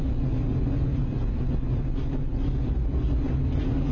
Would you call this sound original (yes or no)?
yes